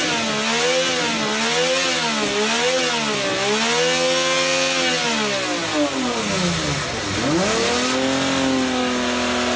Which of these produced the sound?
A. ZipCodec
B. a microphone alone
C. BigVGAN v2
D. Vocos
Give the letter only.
B